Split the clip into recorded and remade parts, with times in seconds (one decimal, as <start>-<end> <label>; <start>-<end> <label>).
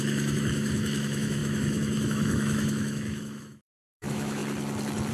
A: 0.0-4.4 remade; 4.4-5.1 recorded